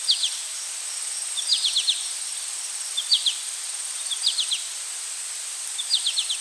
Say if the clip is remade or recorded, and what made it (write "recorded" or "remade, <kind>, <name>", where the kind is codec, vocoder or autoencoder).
recorded